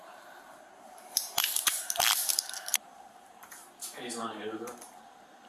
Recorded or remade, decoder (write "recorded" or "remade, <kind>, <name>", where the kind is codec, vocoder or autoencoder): remade, vocoder, BigVGAN v2